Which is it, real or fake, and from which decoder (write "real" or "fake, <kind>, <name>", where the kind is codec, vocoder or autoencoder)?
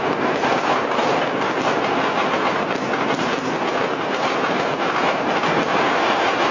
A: real